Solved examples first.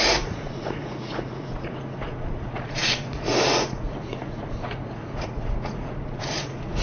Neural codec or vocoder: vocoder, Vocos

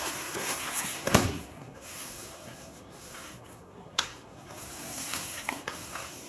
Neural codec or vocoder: codec, SNAC